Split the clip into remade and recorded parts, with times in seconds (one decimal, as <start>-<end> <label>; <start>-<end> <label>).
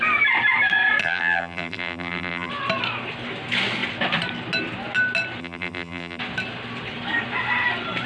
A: 0.0-1.0 recorded; 1.0-2.5 remade; 2.5-5.4 recorded; 5.4-6.2 remade; 6.2-8.1 recorded